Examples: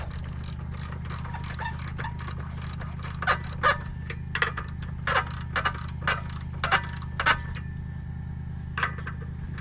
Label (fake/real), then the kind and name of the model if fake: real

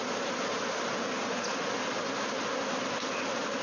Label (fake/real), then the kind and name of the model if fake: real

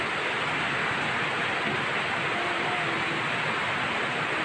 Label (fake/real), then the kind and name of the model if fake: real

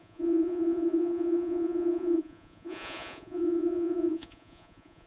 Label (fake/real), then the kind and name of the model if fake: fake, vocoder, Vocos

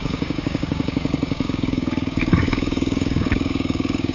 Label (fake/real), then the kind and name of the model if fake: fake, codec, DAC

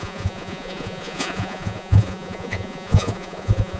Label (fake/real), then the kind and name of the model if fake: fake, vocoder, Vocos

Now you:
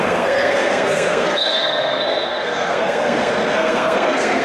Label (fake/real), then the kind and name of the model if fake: fake, codec, SNAC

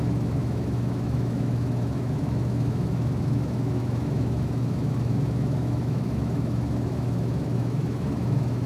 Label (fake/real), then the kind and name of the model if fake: fake, autoencoder, DAC-VAE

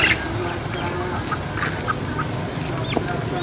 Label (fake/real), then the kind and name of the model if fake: real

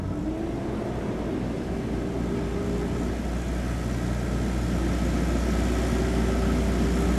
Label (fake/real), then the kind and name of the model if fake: real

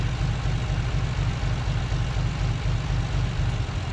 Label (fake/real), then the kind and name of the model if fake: real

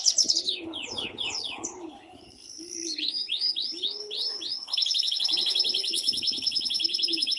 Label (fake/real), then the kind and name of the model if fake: fake, codec, HILCodec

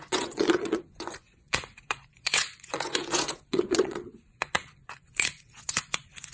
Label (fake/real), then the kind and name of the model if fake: fake, vocoder, Vocos